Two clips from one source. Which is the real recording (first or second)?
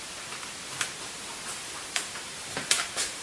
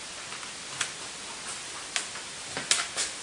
second